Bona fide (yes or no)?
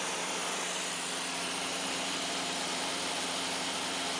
no